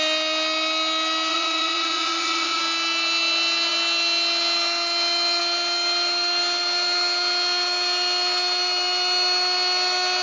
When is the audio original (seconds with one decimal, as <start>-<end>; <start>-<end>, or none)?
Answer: 0.0-1.3; 2.6-10.2